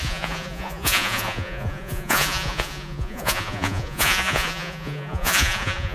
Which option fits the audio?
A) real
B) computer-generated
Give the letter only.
B